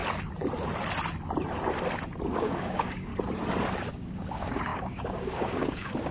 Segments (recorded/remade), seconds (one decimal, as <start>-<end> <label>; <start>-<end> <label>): 0.0-2.3 recorded; 2.3-3.1 remade; 3.1-3.9 recorded; 3.9-6.1 remade